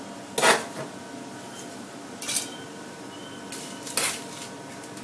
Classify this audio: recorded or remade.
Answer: recorded